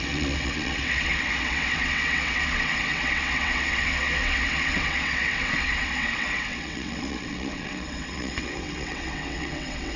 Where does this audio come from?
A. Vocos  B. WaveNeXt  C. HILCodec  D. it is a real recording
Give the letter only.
B